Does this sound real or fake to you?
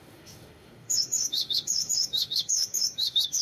fake